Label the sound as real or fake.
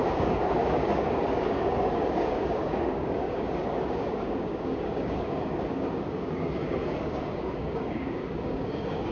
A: fake